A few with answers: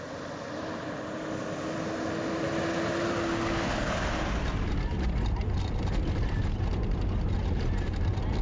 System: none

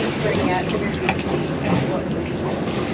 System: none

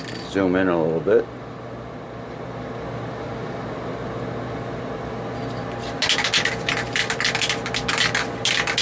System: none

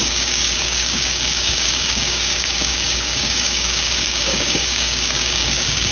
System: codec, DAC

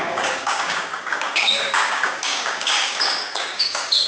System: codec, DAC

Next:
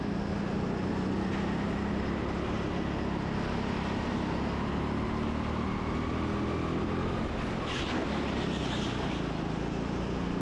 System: none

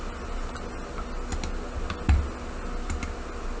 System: none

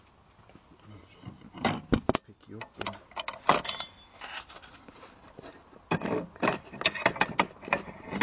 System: none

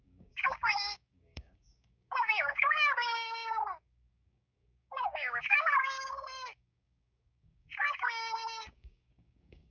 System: codec, DAC